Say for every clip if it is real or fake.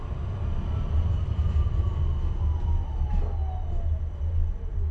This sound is real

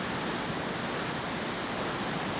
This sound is real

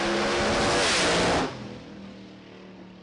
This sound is real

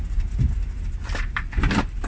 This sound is real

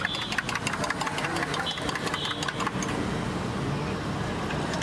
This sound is real